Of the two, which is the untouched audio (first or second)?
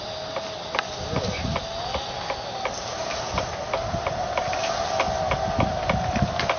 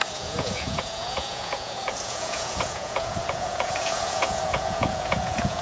first